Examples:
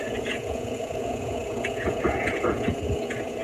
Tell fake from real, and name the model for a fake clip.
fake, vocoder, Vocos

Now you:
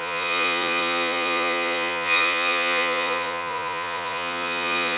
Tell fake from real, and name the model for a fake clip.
fake, vocoder, Vocos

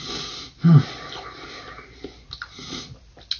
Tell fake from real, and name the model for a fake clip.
real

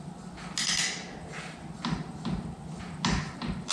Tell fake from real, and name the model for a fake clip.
real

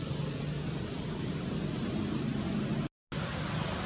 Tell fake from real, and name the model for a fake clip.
real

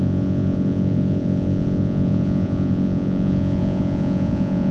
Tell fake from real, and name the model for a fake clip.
fake, vocoder, Vocos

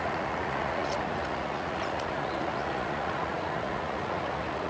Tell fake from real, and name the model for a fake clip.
fake, vocoder, Vocos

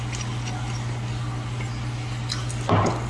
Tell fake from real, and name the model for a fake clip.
real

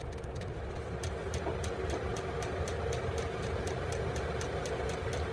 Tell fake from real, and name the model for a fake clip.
real